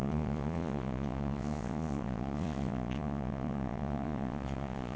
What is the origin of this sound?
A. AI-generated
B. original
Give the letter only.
A